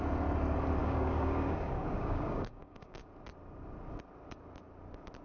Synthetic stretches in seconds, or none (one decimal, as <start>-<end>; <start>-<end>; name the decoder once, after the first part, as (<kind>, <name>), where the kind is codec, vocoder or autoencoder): 0.8-3.0 (codec, DAC)